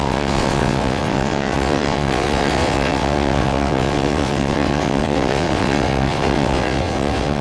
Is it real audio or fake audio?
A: fake